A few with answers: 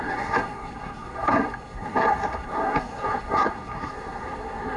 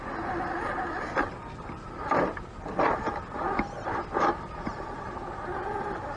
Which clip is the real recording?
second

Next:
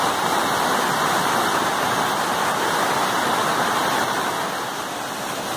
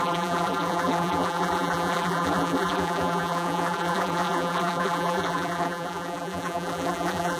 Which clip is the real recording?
first